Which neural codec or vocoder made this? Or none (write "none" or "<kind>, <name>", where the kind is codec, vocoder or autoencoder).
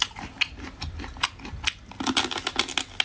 none